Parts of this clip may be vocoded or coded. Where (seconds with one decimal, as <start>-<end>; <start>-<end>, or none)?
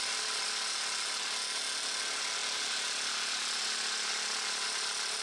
none